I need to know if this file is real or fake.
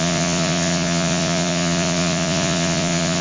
fake